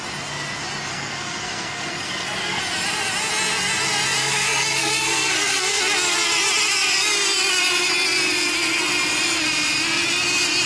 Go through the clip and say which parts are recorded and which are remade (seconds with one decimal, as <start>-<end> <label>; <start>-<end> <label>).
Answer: 0.0-0.9 recorded; 0.9-2.6 remade; 2.6-4.2 recorded; 4.2-5.8 remade; 5.8-10.7 recorded